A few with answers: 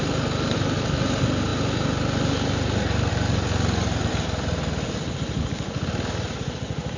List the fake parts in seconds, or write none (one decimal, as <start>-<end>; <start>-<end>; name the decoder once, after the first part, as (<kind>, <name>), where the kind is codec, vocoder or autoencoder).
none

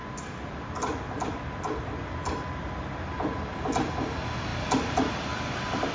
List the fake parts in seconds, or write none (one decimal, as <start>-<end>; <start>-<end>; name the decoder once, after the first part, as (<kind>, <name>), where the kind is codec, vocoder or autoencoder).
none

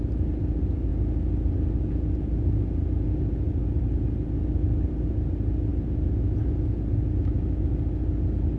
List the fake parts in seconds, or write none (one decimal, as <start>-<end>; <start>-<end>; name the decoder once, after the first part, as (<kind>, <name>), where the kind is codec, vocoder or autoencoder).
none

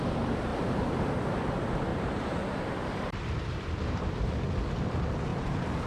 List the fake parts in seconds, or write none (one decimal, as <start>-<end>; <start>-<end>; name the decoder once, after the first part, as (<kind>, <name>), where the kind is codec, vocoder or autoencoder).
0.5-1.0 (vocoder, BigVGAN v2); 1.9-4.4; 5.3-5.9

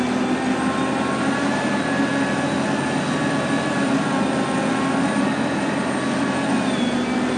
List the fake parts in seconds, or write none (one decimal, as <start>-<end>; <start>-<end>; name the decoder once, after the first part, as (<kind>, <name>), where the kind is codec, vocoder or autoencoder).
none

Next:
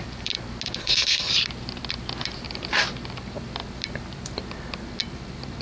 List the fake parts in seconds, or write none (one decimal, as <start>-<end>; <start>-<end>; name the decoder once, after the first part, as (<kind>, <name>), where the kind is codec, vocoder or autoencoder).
0.8-1.3 (codec, HILCodec)

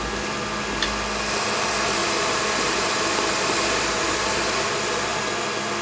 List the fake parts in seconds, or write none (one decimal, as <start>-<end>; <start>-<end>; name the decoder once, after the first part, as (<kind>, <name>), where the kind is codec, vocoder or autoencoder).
2.0-4.3 (vocoder, BigVGAN v2)

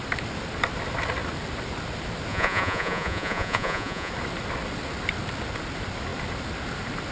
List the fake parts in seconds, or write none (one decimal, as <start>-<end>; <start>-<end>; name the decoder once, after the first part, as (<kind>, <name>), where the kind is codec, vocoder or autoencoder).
2.3-4.1 (vocoder, Vocos)